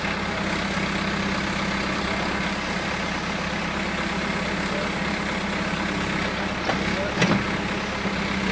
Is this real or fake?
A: real